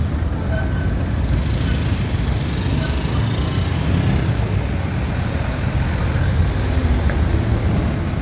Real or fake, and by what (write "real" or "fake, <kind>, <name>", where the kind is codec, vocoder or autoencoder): real